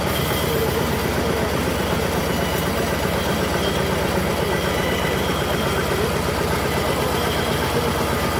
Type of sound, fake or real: real